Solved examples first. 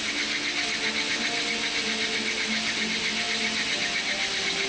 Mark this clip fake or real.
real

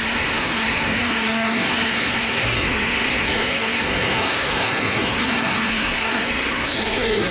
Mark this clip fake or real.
fake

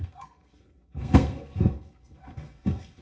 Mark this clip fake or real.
fake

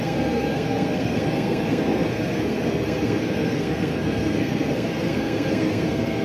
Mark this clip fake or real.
fake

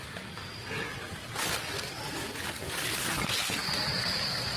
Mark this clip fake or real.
real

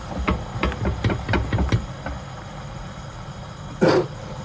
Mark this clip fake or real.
real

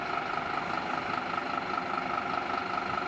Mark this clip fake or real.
real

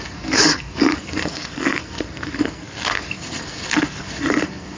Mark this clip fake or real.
fake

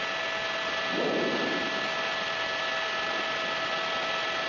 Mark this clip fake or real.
real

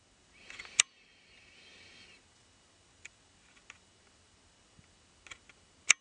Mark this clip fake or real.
real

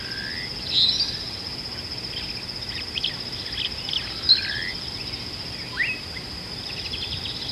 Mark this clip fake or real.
real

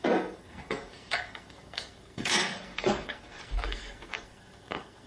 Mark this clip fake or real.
fake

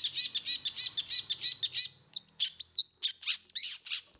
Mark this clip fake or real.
real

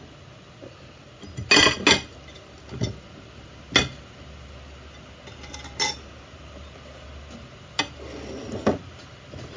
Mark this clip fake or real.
real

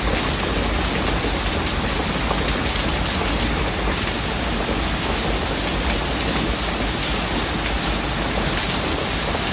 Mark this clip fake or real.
real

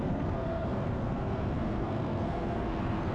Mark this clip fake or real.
fake